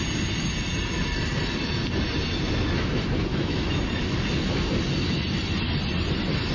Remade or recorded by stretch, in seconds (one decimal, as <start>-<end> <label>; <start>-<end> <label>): 0.0-3.3 recorded; 3.3-3.8 remade; 3.8-6.5 recorded